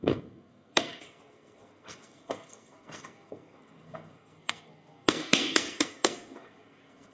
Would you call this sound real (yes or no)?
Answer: no